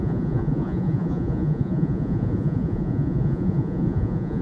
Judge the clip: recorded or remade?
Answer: remade